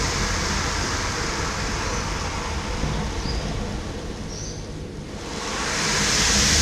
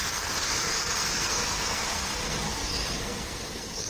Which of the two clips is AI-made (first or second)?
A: second